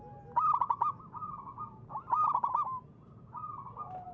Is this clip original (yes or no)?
yes